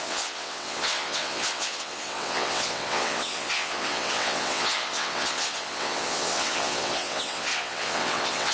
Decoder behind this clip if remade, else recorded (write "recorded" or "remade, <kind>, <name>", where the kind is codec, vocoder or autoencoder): remade, vocoder, WaveNeXt